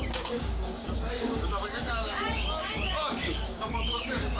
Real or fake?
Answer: fake